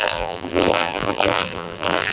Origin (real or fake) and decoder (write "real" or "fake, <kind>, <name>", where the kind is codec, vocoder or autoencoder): fake, vocoder, BigVGAN v2